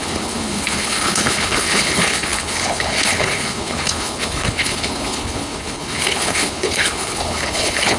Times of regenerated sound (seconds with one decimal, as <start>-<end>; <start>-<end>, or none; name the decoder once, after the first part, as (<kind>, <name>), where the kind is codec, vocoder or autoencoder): 0.0-8.0 (codec, HILCodec)